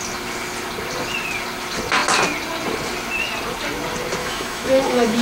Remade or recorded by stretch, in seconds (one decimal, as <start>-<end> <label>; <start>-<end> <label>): 0.0-4.2 recorded; 4.2-5.2 remade